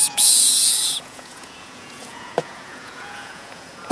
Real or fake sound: fake